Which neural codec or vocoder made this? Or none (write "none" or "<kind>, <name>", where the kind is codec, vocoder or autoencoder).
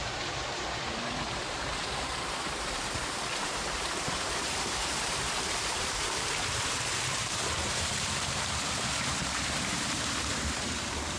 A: vocoder, BigVGAN v2